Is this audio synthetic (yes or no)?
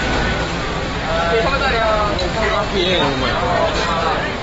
no